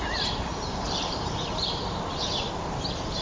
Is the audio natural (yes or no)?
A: no